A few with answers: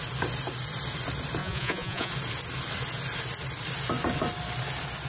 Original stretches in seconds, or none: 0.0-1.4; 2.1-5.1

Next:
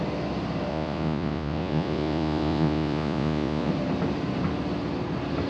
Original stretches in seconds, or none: 0.0-0.7; 3.7-5.5

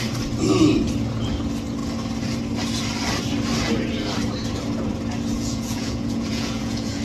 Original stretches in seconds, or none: 0.0-5.3

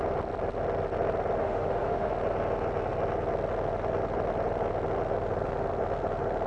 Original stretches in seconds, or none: 0.0-1.4; 2.1-6.5

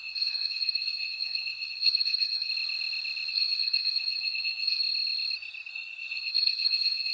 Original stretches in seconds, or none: 2.5-3.3; 4.8-5.7

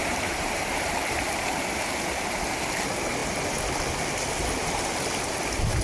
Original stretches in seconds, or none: 0.9-5.8

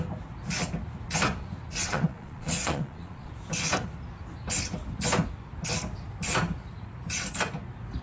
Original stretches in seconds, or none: 0.0-1.7; 3.3-8.0

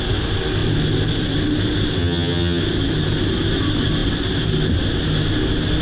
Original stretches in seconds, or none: 0.0-2.0; 2.6-5.8